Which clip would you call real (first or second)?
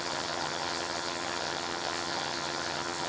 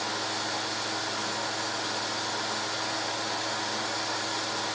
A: second